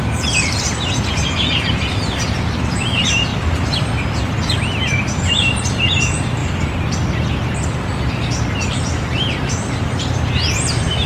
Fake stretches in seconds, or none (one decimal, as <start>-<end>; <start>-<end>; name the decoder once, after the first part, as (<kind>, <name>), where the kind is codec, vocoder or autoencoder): 0.0-3.3 (vocoder, BigVGAN v2); 5.0-6.4; 8.7-11.1